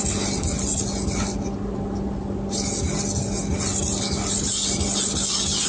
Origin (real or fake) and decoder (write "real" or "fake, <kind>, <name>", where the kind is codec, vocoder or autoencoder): real